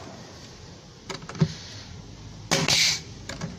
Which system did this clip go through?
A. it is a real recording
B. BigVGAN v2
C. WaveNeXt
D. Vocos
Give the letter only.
A